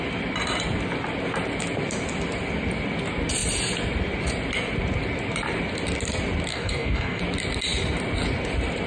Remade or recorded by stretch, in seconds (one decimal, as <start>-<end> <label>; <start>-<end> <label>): 0.0-6.5 recorded; 6.5-7.2 remade; 7.2-8.9 recorded